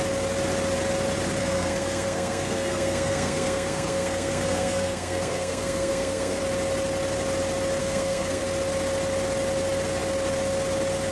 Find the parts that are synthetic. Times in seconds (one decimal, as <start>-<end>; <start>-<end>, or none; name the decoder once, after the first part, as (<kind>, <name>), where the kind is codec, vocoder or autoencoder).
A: 1.4-6.4 (codec, SNAC); 7.8-8.4